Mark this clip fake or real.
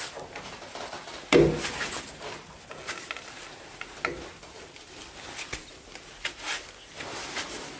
real